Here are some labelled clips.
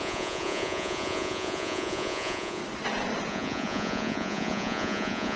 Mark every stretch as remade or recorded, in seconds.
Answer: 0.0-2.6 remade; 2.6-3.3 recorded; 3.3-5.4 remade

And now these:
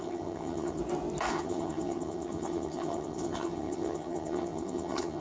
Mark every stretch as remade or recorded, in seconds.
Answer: 0.0-0.8 remade; 0.8-1.3 recorded; 1.3-5.2 remade

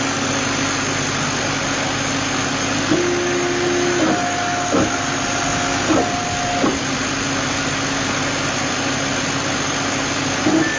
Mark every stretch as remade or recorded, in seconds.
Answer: 0.0-10.8 recorded

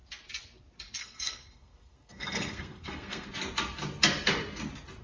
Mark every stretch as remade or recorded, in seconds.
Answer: 0.0-1.0 recorded; 1.0-3.3 remade; 3.3-5.0 recorded

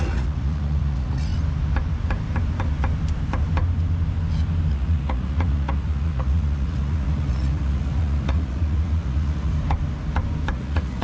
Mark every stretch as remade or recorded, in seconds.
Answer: 0.0-1.3 remade; 1.3-4.7 recorded; 4.7-9.5 remade; 9.5-10.5 recorded; 10.5-11.0 remade

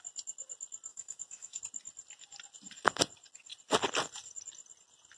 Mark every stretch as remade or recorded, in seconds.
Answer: 0.0-0.9 recorded; 0.9-1.6 remade; 1.6-5.2 recorded

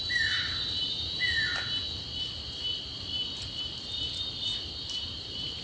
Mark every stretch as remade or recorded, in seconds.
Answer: 0.0-5.6 recorded